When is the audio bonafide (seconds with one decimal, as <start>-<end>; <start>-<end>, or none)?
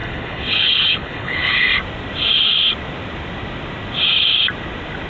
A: 1.7-5.1